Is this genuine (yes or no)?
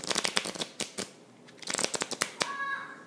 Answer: yes